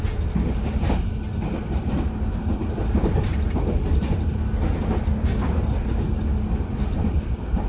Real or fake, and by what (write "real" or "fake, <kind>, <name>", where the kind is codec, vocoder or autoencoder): real